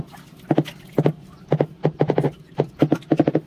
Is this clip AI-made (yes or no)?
no